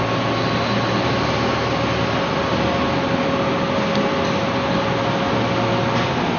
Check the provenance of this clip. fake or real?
real